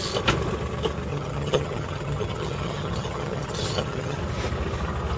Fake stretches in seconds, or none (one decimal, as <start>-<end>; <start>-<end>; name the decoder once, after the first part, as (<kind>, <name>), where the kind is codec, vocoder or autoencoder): 1.1-4.2 (vocoder, HiFi-GAN)